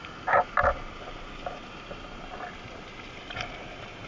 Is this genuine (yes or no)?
yes